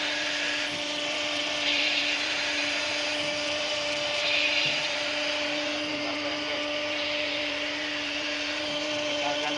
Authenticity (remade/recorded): remade